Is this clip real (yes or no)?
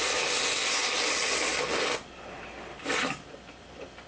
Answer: yes